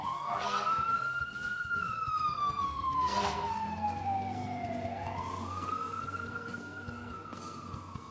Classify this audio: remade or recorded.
remade